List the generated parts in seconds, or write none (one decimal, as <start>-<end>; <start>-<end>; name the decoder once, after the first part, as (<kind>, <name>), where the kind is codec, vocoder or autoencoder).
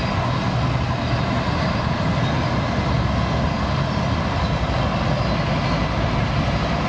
none